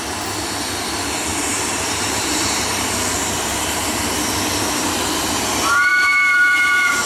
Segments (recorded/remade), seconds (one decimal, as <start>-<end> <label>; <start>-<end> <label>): 0.0-1.3 recorded; 1.3-3.6 remade; 3.6-5.9 recorded; 5.9-7.1 remade